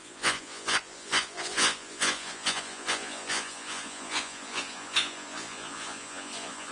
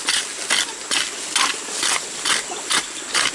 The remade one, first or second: first